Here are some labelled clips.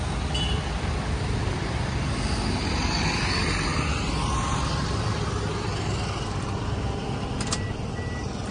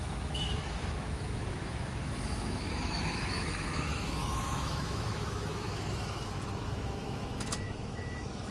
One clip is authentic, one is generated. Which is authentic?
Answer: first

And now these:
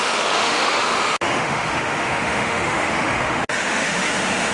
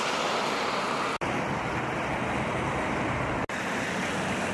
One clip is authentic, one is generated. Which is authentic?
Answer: second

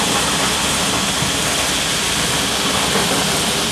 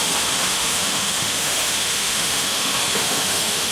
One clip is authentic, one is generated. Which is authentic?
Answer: first